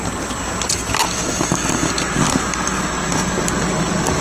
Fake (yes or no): no